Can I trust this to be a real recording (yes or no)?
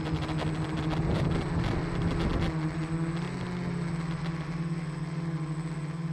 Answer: yes